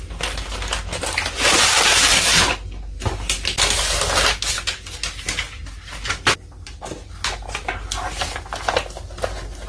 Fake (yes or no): no